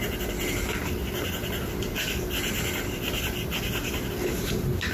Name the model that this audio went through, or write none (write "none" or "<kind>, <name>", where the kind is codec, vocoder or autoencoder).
none